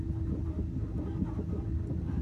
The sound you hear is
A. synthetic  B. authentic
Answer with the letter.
B